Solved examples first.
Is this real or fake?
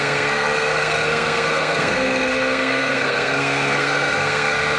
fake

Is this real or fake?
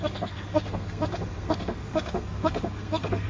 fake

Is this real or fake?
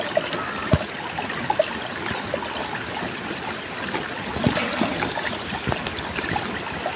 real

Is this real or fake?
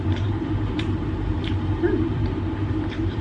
fake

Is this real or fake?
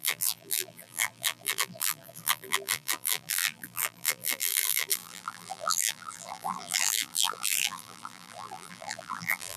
fake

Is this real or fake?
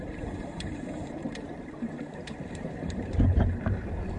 fake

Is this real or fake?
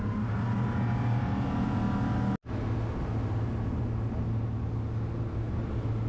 real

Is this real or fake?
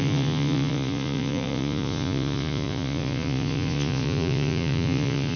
fake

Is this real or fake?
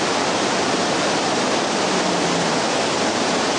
real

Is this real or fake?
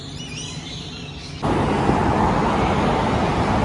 real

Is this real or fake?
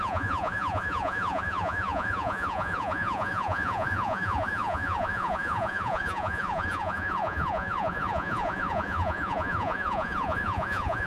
fake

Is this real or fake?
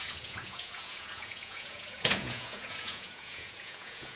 fake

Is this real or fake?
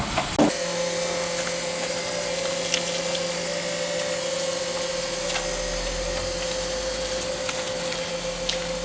real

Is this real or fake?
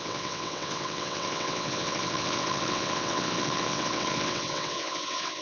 fake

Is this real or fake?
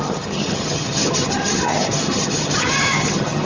fake